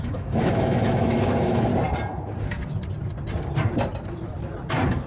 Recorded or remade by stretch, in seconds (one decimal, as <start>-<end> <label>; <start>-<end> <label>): 0.0-1.7 remade; 1.7-5.1 recorded